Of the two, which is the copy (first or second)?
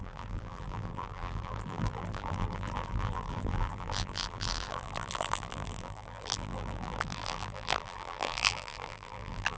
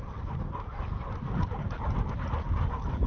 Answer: first